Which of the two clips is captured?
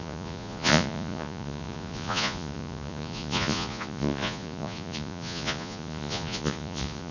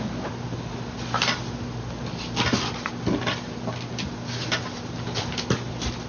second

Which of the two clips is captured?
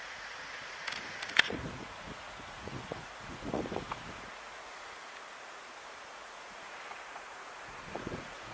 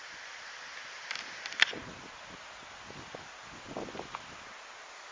second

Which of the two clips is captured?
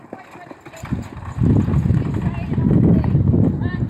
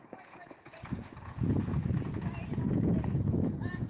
first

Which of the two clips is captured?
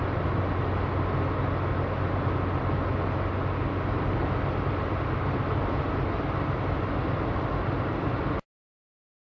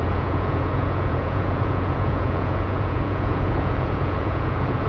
first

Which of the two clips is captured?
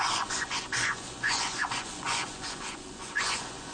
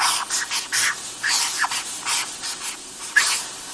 second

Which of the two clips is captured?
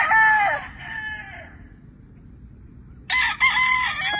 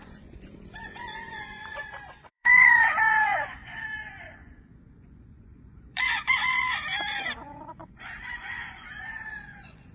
first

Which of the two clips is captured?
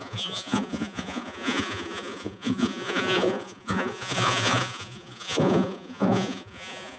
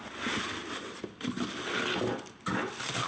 second